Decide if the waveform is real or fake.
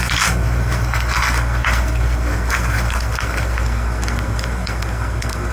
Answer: fake